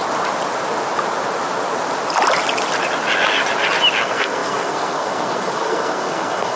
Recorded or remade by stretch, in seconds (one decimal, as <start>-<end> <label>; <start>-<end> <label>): 0.0-4.0 recorded; 4.0-6.6 remade